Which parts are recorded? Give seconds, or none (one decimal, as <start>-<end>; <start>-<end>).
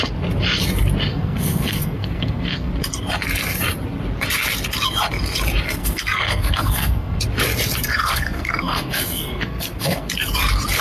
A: 0.0-1.1; 2.7-5.8; 7.2-7.9; 10.1-10.8